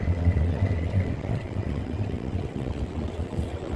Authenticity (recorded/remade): remade